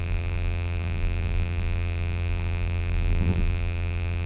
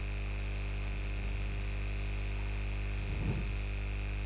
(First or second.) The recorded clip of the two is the second